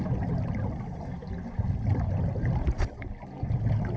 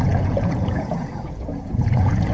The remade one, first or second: second